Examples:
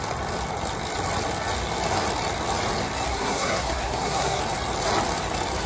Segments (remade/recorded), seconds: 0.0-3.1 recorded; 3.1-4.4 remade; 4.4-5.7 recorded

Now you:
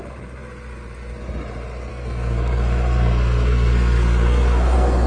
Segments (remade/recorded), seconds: 0.0-1.9 recorded; 1.9-5.1 remade